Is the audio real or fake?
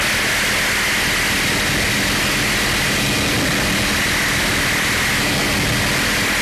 real